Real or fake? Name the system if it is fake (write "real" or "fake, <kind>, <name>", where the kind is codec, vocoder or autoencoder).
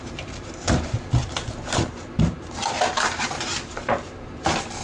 fake, vocoder, BigVGAN v2